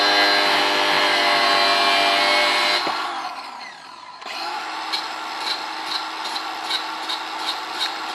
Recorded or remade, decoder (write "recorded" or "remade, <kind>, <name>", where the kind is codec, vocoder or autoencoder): recorded